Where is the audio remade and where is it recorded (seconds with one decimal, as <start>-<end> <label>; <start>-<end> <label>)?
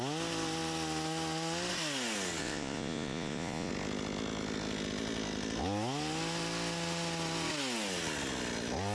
0.0-2.4 recorded; 2.4-3.7 remade; 3.7-8.9 recorded